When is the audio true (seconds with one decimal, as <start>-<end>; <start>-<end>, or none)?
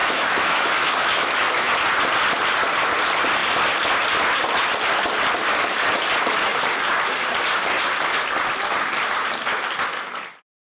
1.7-10.7